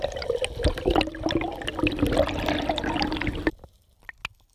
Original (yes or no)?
yes